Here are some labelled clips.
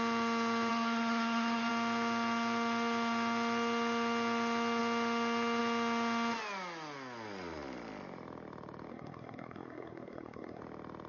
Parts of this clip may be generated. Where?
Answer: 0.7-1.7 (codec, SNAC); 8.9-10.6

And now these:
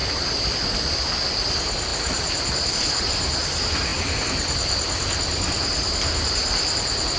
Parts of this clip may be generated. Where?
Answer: none

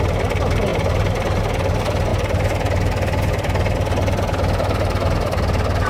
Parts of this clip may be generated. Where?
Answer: none

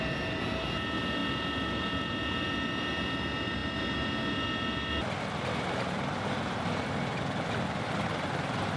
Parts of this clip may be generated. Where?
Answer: none

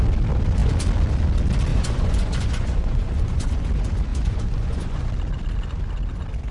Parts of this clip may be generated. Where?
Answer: 1.7-3.6 (vocoder, Vocos); 4.1-5.1

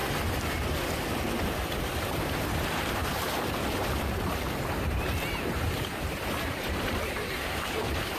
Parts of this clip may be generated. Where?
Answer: 1.3-8.2 (vocoder, BigVGAN v2)

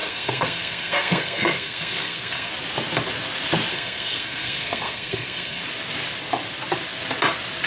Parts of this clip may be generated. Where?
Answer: 0.0-2.5 (codec, SNAC); 3.7-5.6